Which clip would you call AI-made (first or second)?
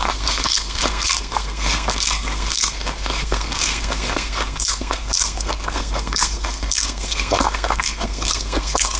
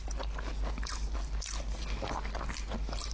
first